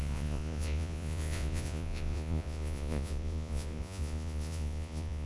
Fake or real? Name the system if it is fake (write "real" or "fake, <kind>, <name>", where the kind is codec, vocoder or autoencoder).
fake, vocoder, Vocos